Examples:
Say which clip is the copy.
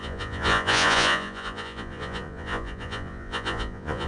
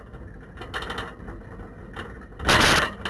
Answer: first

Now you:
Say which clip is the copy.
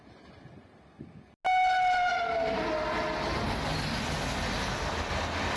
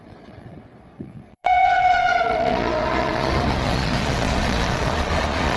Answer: second